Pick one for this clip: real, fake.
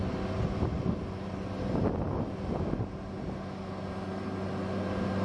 real